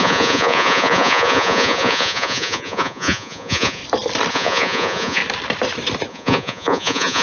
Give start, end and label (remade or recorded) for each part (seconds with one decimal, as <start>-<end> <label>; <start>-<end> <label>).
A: 0.0-3.8 remade; 3.8-4.3 recorded; 4.3-5.2 remade; 5.2-6.1 recorded; 6.1-7.2 remade